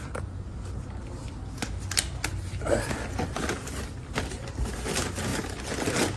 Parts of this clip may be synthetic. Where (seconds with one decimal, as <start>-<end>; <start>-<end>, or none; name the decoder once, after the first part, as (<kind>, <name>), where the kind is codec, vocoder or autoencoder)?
1.2-1.9 (vocoder, BigVGAN v2)